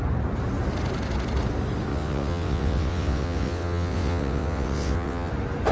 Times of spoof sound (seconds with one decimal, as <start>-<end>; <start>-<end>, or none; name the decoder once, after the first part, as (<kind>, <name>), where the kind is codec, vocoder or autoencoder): 1.9-5.3 (vocoder, WaveNeXt)